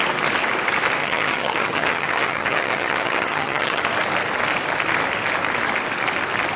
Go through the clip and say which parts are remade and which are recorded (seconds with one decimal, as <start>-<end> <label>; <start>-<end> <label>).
0.0-1.0 recorded; 1.0-3.8 remade; 3.8-6.6 recorded